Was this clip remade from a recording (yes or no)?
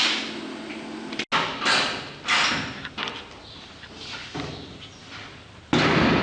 no